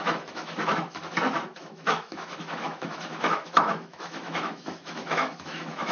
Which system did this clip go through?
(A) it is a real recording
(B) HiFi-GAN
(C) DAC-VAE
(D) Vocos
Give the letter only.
C